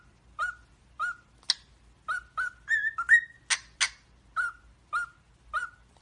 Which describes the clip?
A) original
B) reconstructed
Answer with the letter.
A